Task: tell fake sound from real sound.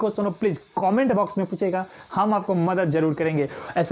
real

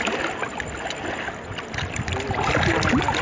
real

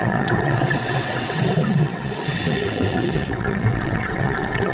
fake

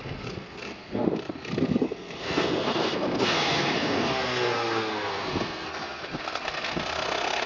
fake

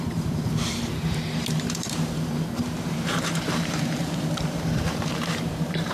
fake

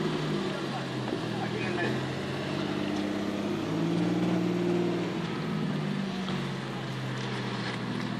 real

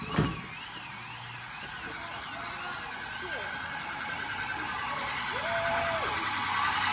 real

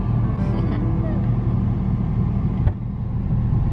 real